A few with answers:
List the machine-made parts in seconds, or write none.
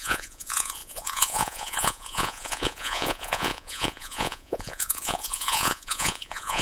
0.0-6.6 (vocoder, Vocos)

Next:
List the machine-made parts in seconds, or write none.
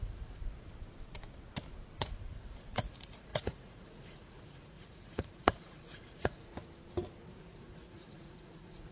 0.0-0.4 (vocoder, Vocos); 2.0-6.5; 7.4-8.9